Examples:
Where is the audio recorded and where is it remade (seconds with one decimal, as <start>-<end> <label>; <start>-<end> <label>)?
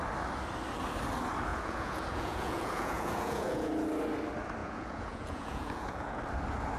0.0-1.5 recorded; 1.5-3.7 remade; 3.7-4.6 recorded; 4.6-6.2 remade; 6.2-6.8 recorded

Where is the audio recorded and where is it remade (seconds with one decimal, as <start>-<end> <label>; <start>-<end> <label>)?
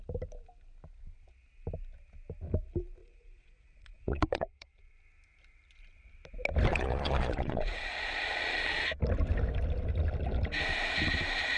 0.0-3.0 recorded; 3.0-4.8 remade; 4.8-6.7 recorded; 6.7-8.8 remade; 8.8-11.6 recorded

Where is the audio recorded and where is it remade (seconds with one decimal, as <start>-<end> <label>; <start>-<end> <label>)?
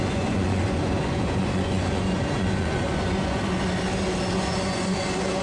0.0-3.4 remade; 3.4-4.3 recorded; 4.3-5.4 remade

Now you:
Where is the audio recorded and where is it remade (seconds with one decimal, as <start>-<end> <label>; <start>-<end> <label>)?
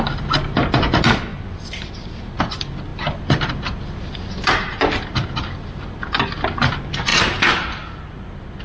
0.0-8.6 recorded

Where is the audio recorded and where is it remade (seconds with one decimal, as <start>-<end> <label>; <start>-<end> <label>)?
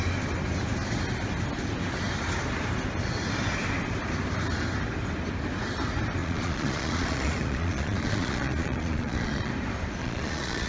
0.0-6.2 recorded; 6.2-9.5 remade; 9.5-10.0 recorded; 10.0-10.7 remade